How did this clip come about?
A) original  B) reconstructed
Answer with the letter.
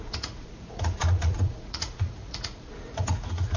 B